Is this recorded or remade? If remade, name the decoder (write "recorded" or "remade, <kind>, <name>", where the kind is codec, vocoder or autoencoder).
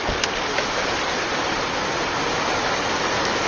recorded